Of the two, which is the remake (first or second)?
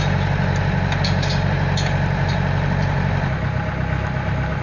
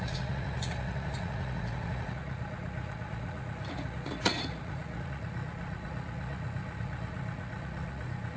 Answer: second